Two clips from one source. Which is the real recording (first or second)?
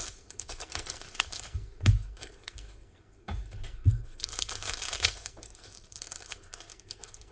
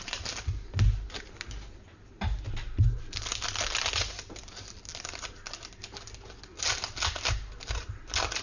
second